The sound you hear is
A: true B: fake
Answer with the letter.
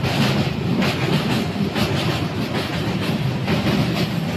A